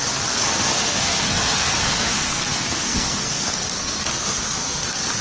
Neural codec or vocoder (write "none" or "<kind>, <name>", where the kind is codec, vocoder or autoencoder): codec, SNAC